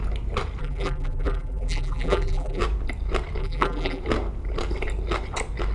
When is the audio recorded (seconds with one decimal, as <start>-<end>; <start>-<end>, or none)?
0.0-0.6; 2.6-3.4; 4.0-5.7